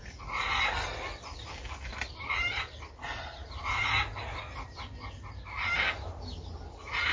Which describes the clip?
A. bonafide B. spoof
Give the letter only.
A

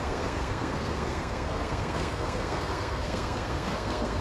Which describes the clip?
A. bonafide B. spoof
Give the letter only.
B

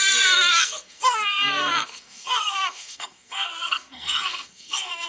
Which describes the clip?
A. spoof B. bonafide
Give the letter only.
A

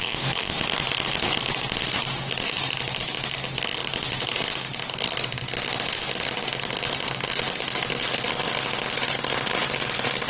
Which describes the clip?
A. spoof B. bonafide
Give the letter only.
B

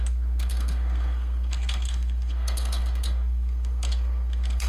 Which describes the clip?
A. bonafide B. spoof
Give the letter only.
B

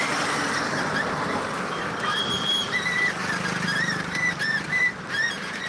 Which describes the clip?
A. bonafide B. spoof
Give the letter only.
A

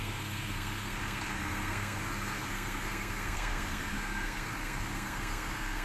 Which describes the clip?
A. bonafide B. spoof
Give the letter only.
B